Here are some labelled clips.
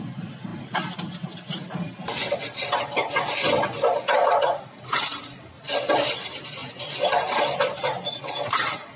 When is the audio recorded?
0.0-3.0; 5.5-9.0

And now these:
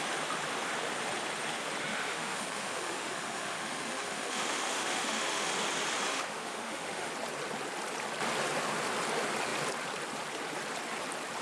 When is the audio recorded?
0.0-1.9; 5.5-6.1; 7.1-11.4